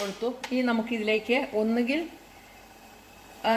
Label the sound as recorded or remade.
remade